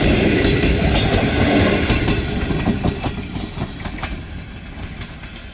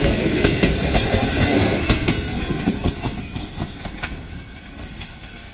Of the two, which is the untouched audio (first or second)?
first